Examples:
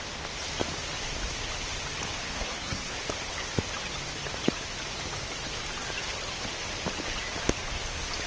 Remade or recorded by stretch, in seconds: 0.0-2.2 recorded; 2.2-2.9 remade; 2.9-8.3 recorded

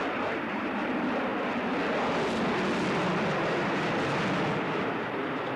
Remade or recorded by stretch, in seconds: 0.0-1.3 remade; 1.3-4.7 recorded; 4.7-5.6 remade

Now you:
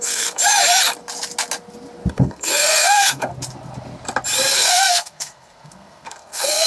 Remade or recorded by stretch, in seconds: 0.0-0.4 remade; 0.4-2.1 recorded; 2.1-3.3 remade; 3.3-4.5 recorded; 4.5-6.7 remade